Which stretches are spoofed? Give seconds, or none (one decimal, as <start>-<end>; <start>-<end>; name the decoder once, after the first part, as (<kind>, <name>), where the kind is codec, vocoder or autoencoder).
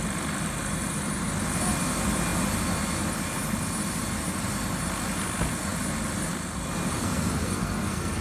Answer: 7.0-8.2 (codec, SNAC)